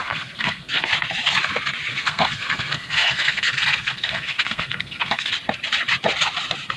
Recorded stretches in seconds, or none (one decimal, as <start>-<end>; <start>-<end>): 0.9-1.9; 5.3-6.8